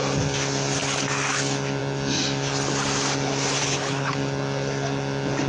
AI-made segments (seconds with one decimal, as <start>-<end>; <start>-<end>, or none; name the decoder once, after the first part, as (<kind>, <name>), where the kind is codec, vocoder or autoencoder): 3.6-4.1 (codec, HILCodec)